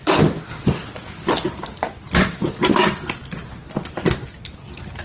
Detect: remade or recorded recorded